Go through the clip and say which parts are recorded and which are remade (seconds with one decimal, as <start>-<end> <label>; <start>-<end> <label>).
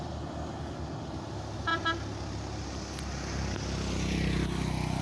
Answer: 0.0-5.0 recorded